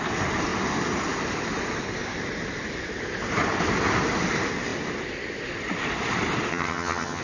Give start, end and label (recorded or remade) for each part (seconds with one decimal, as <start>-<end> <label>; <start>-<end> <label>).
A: 0.0-6.5 recorded; 6.5-7.2 remade